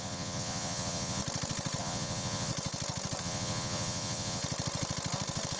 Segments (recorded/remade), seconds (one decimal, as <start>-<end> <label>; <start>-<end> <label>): 0.0-1.2 remade; 1.2-1.8 recorded; 1.8-2.5 remade; 2.5-3.2 recorded; 3.2-4.4 remade; 4.4-5.6 recorded